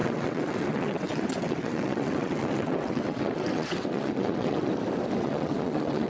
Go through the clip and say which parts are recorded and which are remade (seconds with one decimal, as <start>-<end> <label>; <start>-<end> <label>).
0.0-4.7 remade; 4.7-5.2 recorded; 5.2-6.1 remade